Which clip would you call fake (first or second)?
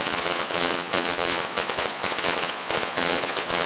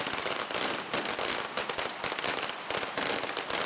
first